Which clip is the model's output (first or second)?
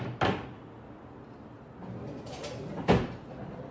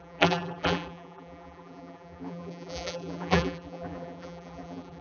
second